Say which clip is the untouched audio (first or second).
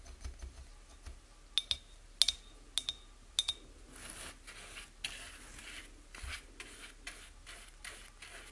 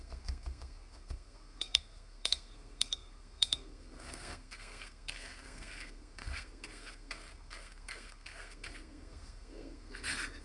first